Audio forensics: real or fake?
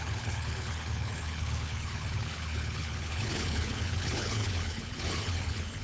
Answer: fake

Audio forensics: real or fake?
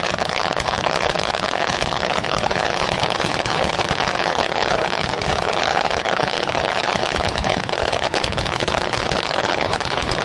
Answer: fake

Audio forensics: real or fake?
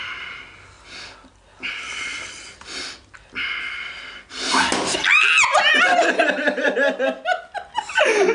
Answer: real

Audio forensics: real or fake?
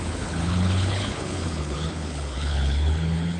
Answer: fake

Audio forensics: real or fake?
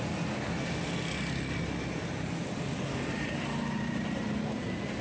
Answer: real